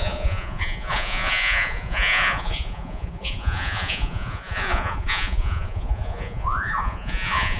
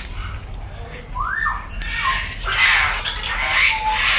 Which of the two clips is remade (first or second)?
first